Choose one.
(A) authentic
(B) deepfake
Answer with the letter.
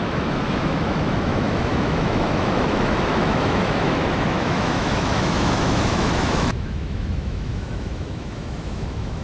B